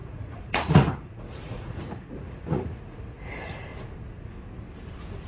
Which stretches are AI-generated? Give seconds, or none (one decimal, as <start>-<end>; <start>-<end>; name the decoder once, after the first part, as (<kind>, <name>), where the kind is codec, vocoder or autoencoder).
0.0-3.7 (vocoder, Vocos)